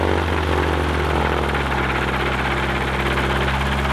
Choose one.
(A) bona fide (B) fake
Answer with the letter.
A